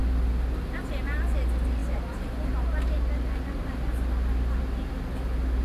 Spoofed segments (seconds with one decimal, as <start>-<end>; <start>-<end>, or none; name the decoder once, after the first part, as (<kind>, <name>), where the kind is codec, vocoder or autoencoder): none